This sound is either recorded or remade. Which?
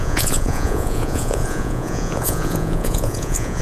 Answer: remade